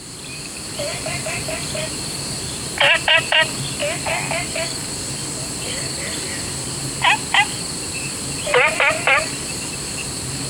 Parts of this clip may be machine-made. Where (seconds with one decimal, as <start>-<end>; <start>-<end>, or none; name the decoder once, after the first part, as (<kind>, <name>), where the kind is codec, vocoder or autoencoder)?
none